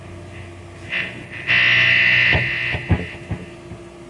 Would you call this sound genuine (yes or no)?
yes